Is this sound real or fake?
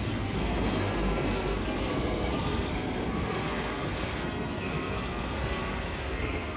fake